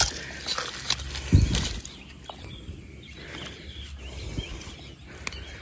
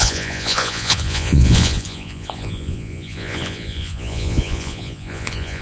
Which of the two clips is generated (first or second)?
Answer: second